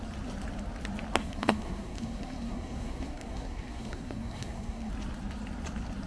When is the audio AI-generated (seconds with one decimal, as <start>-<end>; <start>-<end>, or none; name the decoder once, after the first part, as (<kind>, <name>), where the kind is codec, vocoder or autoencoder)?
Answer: 1.2-4.9 (codec, SNAC)